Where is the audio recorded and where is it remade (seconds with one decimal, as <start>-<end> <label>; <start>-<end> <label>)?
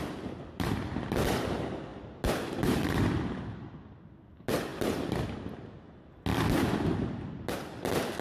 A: 0.0-8.2 recorded